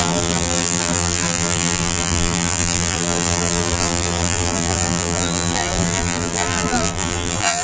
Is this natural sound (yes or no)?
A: no